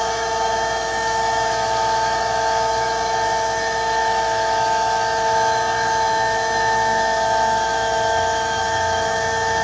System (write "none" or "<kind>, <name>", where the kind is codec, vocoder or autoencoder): autoencoder, DAC-VAE